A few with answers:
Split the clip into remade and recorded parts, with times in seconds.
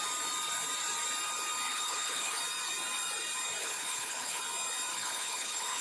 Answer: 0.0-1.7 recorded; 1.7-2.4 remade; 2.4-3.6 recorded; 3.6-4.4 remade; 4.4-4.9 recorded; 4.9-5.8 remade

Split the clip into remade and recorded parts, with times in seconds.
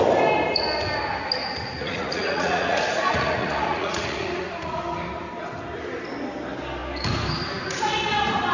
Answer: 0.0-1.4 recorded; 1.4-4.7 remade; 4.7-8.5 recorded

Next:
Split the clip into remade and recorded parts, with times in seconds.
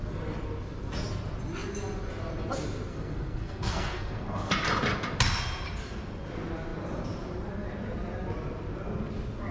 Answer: 0.0-2.9 recorded; 2.9-4.5 remade; 4.5-9.5 recorded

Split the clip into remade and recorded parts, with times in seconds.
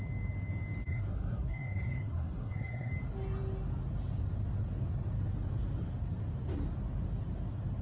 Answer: 0.0-0.9 recorded; 0.9-2.9 remade; 2.9-7.8 recorded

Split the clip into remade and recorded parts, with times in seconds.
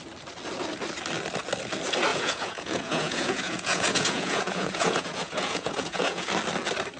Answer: 0.0-2.1 recorded; 2.1-6.3 remade; 6.3-7.0 recorded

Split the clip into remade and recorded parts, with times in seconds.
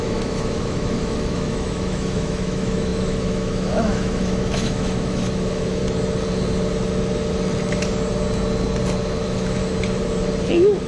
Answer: 0.0-5.8 remade; 5.8-9.2 recorded; 9.2-9.6 remade; 9.6-10.5 recorded; 10.5-10.9 remade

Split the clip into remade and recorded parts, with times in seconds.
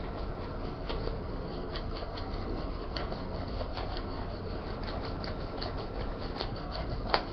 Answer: 0.0-0.5 recorded; 0.5-4.6 remade; 4.6-6.4 recorded; 6.4-7.3 remade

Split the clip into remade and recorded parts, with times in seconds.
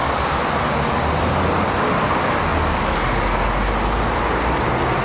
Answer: 0.0-5.0 recorded